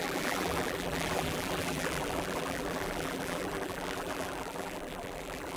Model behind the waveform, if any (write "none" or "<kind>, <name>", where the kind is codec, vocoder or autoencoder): vocoder, BigVGAN v2